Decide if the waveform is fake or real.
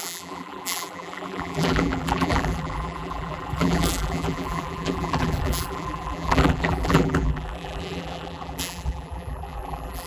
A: fake